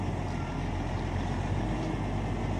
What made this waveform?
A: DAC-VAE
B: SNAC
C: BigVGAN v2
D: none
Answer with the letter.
D